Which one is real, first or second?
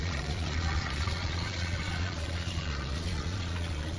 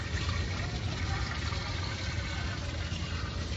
second